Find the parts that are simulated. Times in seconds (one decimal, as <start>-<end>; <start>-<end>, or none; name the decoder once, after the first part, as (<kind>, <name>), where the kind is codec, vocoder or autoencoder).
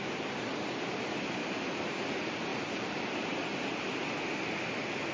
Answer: 1.4-2.1 (vocoder, BigVGAN v2); 2.5-3.4